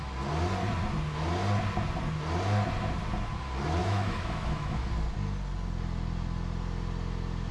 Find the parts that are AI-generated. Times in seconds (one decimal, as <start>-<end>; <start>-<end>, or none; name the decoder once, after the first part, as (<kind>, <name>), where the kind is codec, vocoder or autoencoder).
3.8-4.9 (autoencoder, DAC-VAE)

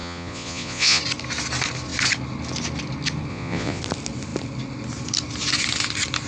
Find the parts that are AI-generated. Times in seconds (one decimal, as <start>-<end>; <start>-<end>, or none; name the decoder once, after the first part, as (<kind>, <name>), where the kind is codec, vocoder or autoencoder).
0.0-1.0 (vocoder, Vocos); 3.3-3.8

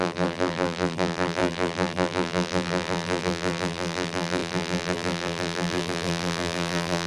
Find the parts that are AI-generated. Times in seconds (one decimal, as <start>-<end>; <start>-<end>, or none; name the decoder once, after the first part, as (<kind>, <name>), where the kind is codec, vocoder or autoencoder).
0.0-7.1 (vocoder, BigVGAN v2)